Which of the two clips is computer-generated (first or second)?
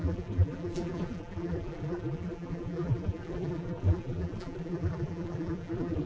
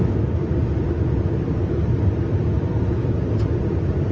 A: first